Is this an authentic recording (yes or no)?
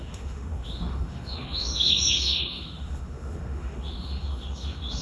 no